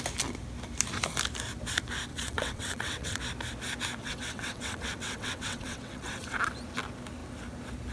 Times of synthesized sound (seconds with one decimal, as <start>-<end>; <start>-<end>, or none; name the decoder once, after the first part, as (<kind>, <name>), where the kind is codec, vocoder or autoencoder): 2.1-3.2 (vocoder, WaveNeXt); 4.0-6.4